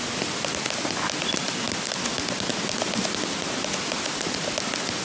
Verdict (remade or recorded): recorded